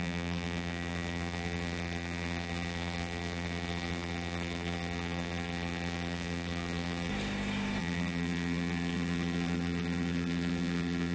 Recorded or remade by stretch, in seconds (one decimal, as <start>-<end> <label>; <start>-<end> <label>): 0.0-7.1 remade; 7.1-7.8 recorded; 7.8-11.1 remade